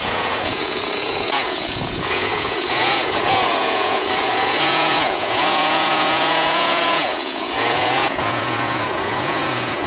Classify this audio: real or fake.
fake